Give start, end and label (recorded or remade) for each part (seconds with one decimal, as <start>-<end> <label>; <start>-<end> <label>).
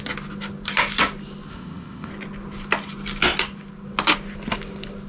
0.0-1.5 recorded; 1.5-2.1 remade; 2.1-5.1 recorded